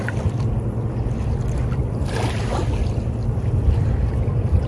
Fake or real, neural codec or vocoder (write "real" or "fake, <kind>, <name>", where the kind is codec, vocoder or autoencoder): real